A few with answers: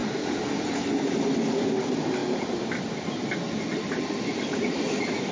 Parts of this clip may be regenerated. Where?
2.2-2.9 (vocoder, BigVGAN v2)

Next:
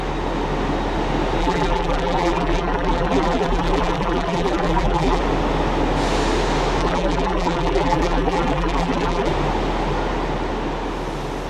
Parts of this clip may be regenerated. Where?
1.4-5.2 (vocoder, BigVGAN v2); 6.8-9.3

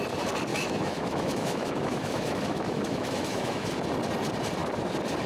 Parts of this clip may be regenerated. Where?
0.5-3.7 (autoencoder, DAC-VAE)

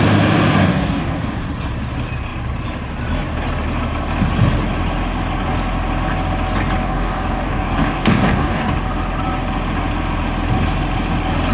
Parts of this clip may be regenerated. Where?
0.7-1.4 (codec, DAC); 6.8-8.7

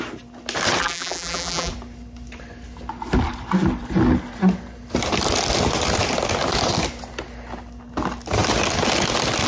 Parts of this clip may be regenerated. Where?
0.8-1.7 (vocoder, BigVGAN v2)

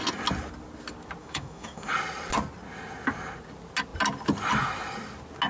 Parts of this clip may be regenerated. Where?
1.2-1.9 (autoencoder, DAC-VAE)

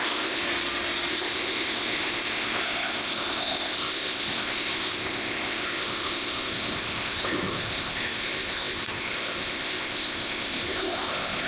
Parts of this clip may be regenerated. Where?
0.0-0.4 (codec, ZipCodec); 1.1-11.5